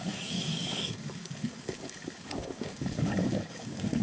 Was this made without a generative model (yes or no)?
no